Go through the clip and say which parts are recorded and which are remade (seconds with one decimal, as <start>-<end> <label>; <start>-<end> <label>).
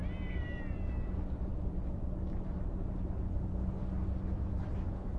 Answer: 0.0-5.2 recorded